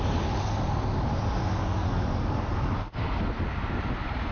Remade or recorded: recorded